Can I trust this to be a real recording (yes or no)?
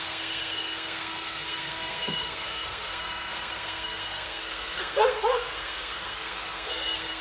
no